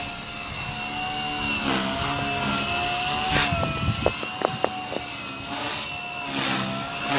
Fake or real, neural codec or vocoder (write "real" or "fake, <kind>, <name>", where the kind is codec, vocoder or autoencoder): real